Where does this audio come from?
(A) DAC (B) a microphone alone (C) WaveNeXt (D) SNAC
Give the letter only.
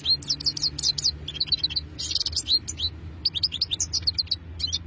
B